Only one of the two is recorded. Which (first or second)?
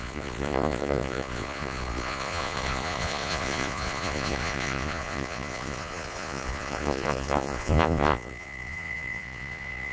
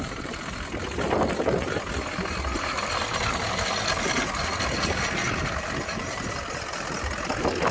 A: second